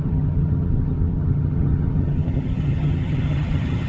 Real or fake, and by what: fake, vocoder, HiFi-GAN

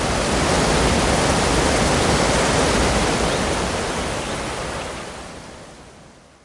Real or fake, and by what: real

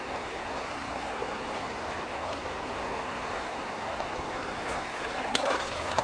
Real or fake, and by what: fake, codec, SNAC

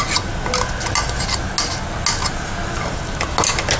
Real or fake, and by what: real